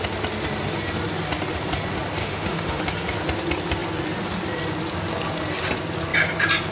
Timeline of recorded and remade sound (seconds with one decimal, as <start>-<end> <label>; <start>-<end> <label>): 0.0-2.2 recorded; 2.2-2.8 remade; 2.8-6.7 recorded